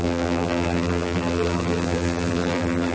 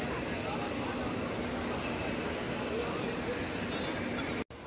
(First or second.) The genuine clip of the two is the second